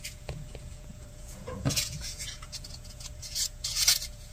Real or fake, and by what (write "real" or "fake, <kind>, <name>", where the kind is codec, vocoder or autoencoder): fake, vocoder, Vocos